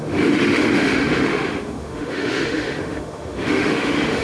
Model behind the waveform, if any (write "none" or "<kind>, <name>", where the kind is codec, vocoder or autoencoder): autoencoder, DAC-VAE